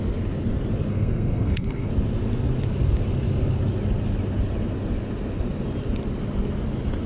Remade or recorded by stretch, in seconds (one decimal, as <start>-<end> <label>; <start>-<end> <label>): 0.0-0.9 recorded; 0.9-1.9 remade; 1.9-7.1 recorded